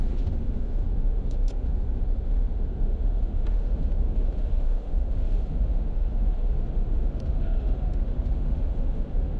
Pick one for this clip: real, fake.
fake